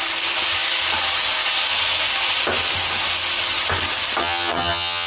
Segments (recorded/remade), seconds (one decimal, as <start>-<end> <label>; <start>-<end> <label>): 0.0-4.2 recorded; 4.2-5.1 remade